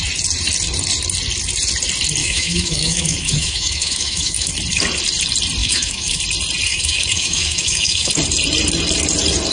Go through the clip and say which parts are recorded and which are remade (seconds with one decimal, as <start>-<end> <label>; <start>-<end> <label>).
0.0-2.2 recorded; 2.2-4.5 remade; 4.5-5.6 recorded; 5.6-6.2 remade; 6.2-6.7 recorded; 6.7-8.1 remade; 8.1-9.5 recorded